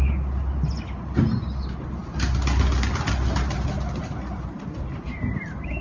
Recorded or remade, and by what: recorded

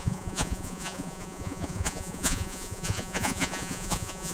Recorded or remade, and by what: remade, vocoder, Vocos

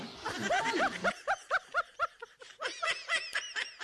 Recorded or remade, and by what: recorded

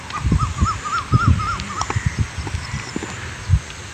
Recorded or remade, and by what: recorded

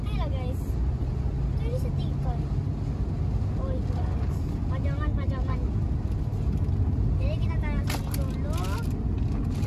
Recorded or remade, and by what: recorded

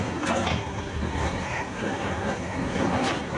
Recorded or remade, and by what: remade, codec, SNAC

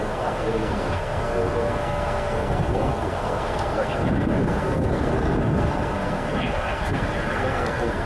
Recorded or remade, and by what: remade, codec, SNAC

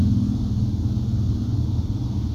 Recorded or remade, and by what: recorded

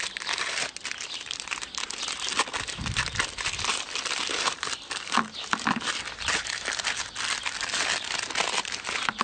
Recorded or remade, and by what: recorded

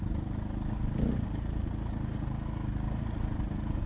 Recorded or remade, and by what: recorded